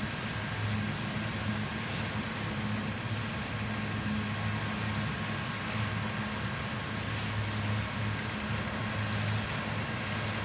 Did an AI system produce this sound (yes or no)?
no